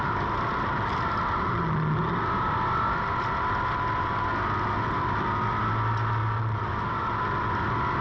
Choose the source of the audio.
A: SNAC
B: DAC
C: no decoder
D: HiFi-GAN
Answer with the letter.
C